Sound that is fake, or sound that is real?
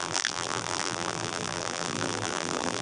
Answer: fake